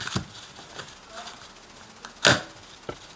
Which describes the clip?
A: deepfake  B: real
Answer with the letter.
B